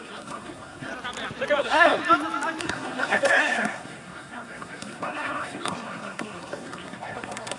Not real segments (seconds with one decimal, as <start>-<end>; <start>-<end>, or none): 0.0-0.9; 1.6-2.0; 2.6-7.6